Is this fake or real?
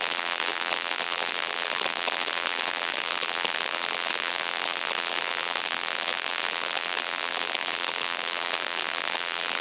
fake